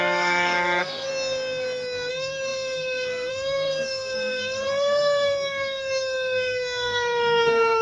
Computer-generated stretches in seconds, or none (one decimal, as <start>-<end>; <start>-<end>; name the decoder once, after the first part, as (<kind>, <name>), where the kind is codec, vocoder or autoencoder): 0.0-1.1 (codec, SNAC); 2.1-7.8

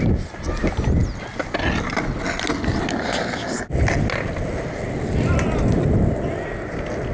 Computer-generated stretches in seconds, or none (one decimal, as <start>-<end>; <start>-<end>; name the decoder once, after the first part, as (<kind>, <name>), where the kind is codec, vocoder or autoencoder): none

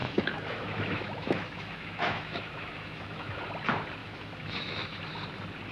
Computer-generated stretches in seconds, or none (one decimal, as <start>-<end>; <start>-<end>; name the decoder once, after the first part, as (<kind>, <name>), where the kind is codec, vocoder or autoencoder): 0.0-3.4 (autoencoder, DAC-VAE); 4.0-5.0

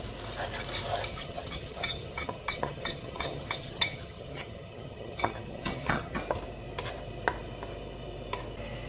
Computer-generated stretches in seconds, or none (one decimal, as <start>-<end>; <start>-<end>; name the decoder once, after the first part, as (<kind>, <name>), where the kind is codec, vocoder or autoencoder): 1.1-6.2 (vocoder, HiFi-GAN)